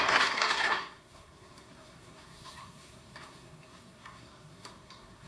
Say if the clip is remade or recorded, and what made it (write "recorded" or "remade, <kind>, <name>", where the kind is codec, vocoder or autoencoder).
remade, codec, SNAC